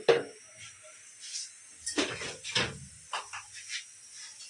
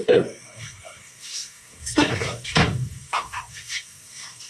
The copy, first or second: second